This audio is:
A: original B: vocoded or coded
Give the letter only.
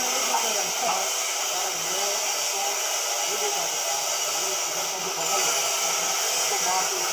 A